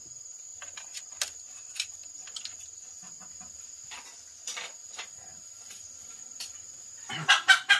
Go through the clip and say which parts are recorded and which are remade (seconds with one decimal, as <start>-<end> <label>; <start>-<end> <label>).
0.0-7.8 recorded

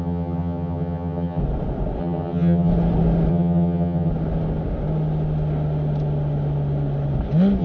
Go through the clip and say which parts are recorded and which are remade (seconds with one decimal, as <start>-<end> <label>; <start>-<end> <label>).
0.0-1.4 remade; 1.4-2.0 recorded; 2.0-2.7 remade; 2.7-3.3 recorded; 3.3-4.1 remade; 4.1-7.6 recorded

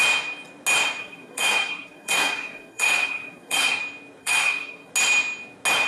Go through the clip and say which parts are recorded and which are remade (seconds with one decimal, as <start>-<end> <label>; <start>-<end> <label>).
0.0-1.0 recorded; 1.0-3.8 remade; 3.8-4.2 recorded; 4.2-4.9 remade; 4.9-5.9 recorded